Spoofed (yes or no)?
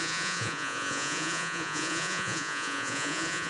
yes